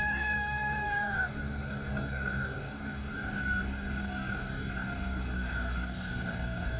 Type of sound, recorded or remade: remade